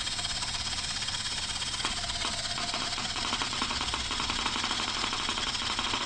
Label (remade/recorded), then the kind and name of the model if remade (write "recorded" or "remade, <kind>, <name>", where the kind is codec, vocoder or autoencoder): remade, vocoder, Vocos